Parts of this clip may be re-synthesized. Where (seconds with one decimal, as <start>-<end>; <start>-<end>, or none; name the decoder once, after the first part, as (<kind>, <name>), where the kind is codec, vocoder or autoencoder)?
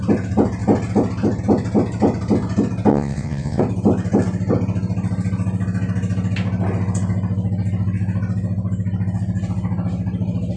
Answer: 2.9-3.6 (vocoder, WaveNeXt)